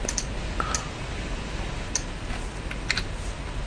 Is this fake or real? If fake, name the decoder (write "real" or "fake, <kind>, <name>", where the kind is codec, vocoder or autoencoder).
real